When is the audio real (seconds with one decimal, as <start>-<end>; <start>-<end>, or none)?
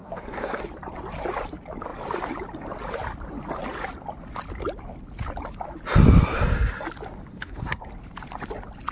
0.6-7.3; 7.9-8.9